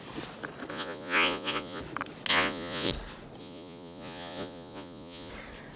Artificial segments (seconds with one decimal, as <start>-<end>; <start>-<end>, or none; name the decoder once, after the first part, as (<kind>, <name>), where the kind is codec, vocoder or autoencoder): 0.7-1.8 (vocoder, Vocos); 2.3-2.9; 3.4-5.3